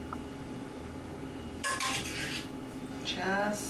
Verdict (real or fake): real